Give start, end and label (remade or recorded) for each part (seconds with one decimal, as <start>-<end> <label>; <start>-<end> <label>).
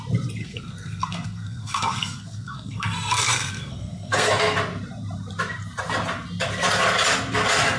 0.0-0.4 recorded; 0.4-4.3 remade; 4.3-7.8 recorded